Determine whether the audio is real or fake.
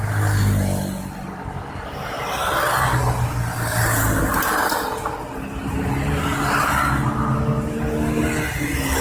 real